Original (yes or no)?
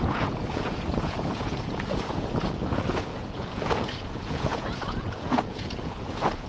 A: no